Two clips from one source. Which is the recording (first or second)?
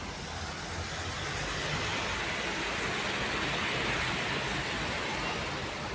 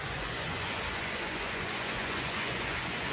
first